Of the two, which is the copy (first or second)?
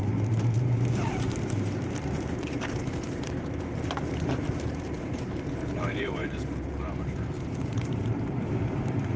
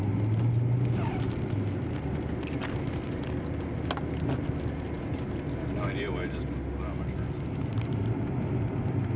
first